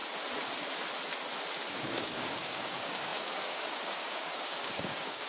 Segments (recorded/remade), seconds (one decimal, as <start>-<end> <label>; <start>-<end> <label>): 0.0-1.7 recorded; 1.7-5.3 remade